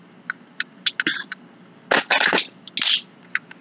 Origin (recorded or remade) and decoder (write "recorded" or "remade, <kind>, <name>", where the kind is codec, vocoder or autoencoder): recorded